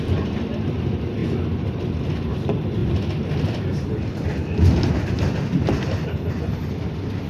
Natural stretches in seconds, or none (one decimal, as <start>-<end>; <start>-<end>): 0.0-7.3